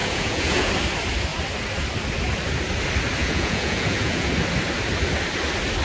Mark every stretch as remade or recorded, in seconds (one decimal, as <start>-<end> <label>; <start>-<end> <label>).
0.0-0.7 remade; 0.7-3.2 recorded; 3.2-4.3 remade; 4.3-5.8 recorded